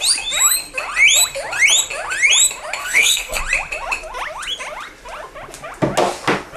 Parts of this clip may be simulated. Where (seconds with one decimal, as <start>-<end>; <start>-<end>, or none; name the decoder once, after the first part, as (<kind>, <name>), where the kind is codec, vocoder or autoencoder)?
2.8-3.4 (codec, SNAC)